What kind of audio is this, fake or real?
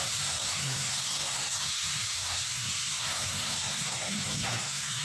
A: fake